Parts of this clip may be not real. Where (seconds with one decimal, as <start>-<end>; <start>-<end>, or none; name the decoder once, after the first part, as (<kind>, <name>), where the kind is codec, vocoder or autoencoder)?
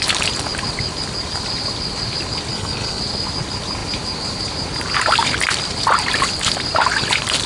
2.5-3.0 (codec, HILCodec)